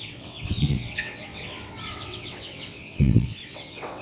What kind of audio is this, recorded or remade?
remade